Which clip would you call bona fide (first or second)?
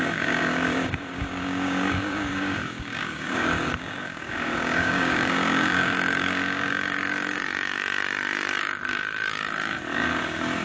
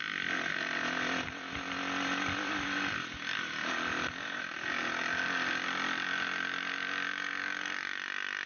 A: second